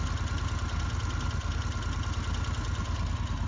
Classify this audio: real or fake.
real